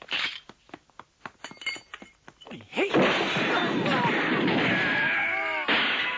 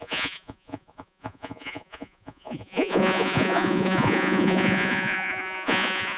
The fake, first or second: second